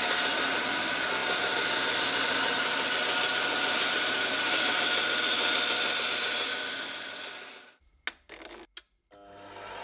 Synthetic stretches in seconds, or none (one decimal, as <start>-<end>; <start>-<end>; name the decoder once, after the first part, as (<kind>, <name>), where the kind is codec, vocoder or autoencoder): none